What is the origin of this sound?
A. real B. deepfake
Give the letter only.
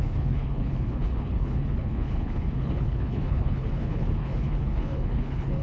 B